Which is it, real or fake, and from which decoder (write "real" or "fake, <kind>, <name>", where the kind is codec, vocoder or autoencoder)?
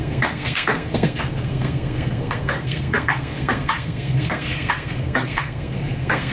fake, codec, SNAC